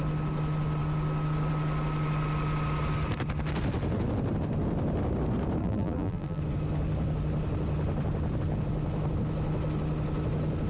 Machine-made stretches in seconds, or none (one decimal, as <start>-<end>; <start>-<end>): 5.6-6.4